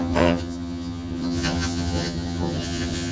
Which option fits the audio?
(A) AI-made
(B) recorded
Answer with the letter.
A